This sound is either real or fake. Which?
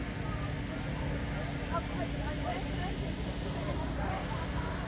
real